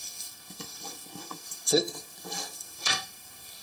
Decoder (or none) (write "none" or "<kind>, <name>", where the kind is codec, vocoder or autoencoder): codec, SNAC